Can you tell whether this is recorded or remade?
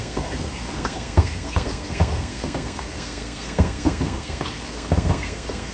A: remade